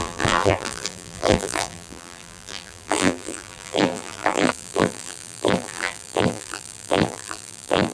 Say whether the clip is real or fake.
fake